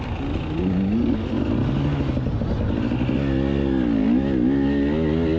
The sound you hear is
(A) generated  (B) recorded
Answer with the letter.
B